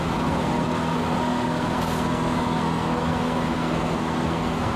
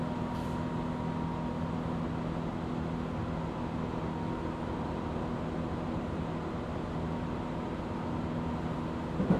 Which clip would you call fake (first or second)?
first